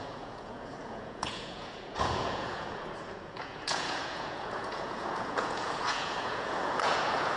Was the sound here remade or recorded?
remade